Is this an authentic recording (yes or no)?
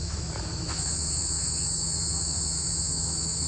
no